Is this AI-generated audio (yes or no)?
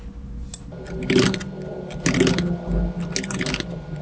no